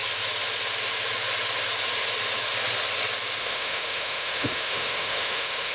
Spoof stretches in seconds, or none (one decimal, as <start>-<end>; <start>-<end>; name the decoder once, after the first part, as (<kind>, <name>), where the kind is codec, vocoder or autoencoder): 3.4-5.7 (autoencoder, DAC-VAE)